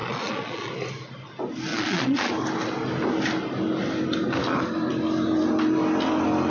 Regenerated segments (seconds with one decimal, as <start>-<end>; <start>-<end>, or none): 0.0-0.7; 1.7-2.3